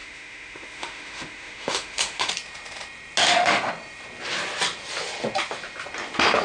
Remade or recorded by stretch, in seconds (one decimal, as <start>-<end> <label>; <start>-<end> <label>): 0.0-2.3 remade; 2.3-3.2 recorded; 3.2-3.7 remade; 3.7-6.4 recorded

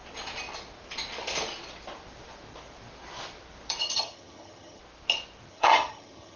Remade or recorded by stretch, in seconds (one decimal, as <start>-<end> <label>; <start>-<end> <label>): 0.0-3.8 recorded; 3.8-4.8 remade; 4.8-5.5 recorded; 5.5-6.4 remade

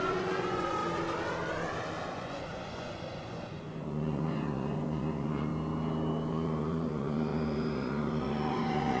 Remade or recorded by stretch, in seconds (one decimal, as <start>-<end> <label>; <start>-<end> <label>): 0.0-0.8 remade; 0.8-2.1 recorded; 2.1-5.5 remade; 5.5-6.3 recorded; 6.3-9.0 remade

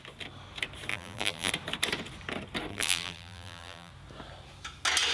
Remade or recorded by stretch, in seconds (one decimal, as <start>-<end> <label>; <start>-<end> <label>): 0.0-0.9 recorded; 0.9-1.5 remade; 1.5-2.7 recorded; 2.7-3.9 remade; 3.9-5.1 recorded

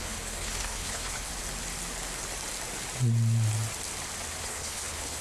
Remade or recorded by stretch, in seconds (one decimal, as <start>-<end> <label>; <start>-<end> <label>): 0.0-1.3 remade; 1.3-4.4 recorded; 4.4-5.2 remade

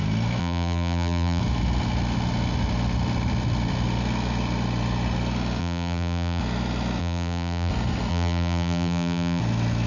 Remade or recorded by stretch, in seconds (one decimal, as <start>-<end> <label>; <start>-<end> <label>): 0.0-0.4 recorded; 0.4-1.4 remade; 1.4-5.6 recorded; 5.6-6.4 remade; 6.4-7.0 recorded; 7.0-7.7 remade; 7.7-8.1 recorded; 8.1-9.4 remade; 9.4-9.9 recorded

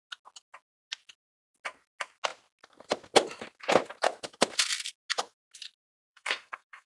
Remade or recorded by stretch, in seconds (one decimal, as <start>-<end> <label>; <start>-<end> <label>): 0.0-5.8 recorded; 5.8-6.9 remade